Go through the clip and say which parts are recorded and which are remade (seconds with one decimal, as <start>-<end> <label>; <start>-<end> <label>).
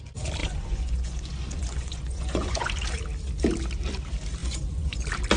0.0-0.4 recorded; 0.4-2.7 remade; 2.7-4.4 recorded; 4.4-5.0 remade; 5.0-5.4 recorded